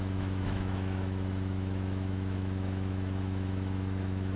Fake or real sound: fake